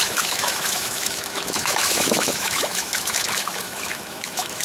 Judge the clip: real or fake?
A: fake